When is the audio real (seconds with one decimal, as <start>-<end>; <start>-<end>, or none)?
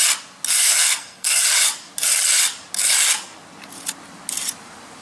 0.0-0.6; 1.4-5.0